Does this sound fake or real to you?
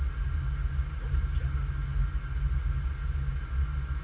real